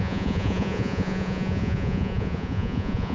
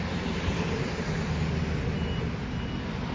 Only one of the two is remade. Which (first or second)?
first